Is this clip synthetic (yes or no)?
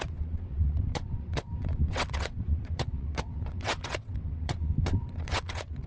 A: yes